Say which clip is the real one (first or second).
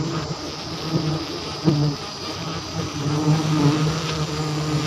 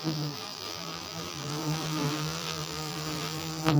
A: first